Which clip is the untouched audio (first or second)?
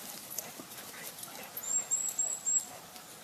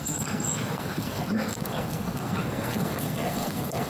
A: first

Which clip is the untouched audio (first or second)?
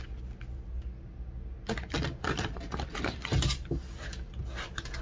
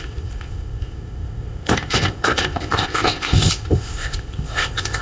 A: first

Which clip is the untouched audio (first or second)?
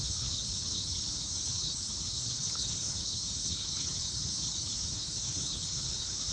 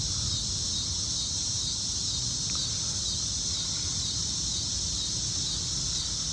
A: second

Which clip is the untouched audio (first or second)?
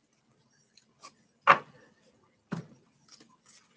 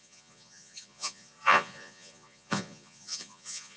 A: first